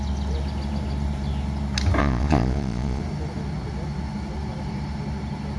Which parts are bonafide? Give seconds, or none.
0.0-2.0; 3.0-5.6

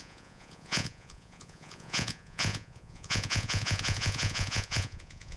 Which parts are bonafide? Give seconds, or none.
none